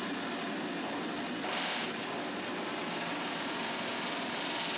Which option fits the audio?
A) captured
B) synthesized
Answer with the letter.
A